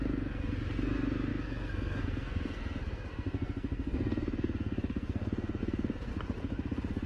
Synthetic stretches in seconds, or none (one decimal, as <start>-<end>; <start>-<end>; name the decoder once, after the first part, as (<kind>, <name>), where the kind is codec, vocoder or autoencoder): 0.0-6.1 (codec, SNAC)